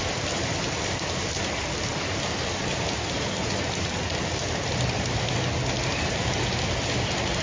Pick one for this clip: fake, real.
real